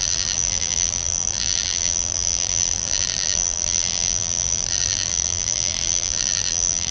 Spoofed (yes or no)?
yes